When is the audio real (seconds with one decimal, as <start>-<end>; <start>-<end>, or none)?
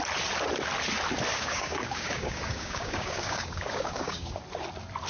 0.0-1.3; 4.4-5.1